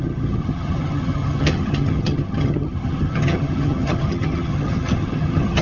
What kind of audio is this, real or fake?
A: fake